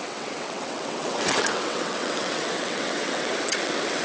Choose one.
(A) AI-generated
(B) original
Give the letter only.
A